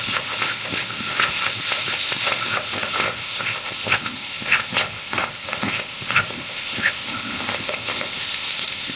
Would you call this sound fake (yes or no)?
yes